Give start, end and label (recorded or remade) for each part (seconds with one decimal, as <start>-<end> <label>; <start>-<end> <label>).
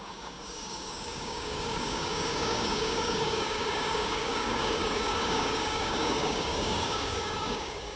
0.0-8.0 remade